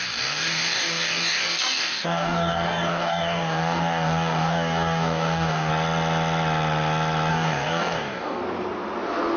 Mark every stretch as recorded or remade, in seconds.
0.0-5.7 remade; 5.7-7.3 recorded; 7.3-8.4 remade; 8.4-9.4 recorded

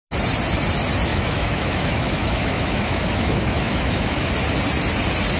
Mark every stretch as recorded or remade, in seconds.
0.0-1.1 recorded; 1.1-4.3 remade; 4.3-5.4 recorded

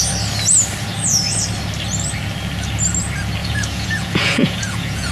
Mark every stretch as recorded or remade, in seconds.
0.0-3.4 recorded; 3.4-5.1 remade